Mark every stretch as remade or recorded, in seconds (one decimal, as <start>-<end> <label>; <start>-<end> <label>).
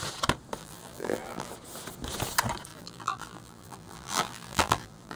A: 0.0-0.6 recorded; 0.6-1.5 remade; 1.5-2.7 recorded; 2.7-5.2 remade